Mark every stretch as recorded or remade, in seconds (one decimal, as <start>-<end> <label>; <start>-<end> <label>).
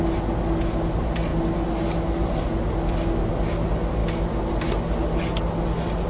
0.0-6.1 recorded